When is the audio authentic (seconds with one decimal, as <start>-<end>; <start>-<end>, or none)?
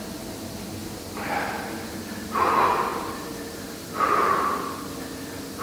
0.0-5.6